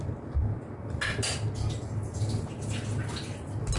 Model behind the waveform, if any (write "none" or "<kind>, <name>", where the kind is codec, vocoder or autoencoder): none